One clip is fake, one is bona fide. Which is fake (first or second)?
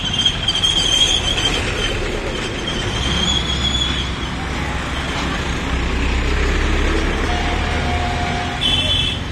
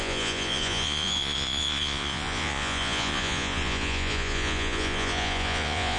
second